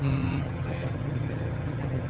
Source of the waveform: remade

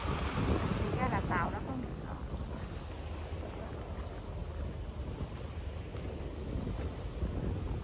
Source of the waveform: recorded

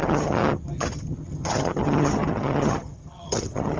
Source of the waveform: remade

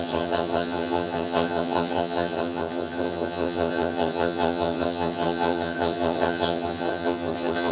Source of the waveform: remade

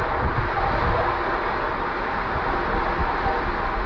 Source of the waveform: recorded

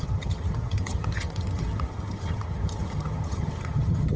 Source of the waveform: remade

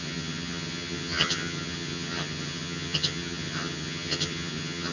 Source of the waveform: remade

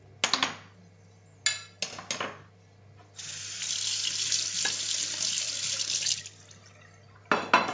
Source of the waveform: recorded